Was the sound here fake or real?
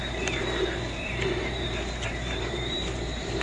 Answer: fake